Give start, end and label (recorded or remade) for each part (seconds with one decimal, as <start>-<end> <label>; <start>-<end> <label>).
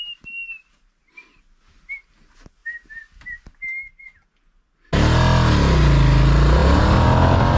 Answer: 0.0-7.6 recorded